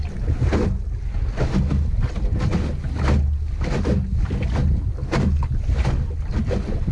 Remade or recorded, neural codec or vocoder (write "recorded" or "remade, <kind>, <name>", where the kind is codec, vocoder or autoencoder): recorded